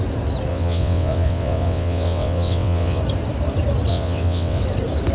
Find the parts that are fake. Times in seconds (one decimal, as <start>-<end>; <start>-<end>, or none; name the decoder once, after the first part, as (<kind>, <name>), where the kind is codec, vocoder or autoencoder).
0.5-3.0 (vocoder, WaveNeXt); 3.9-4.6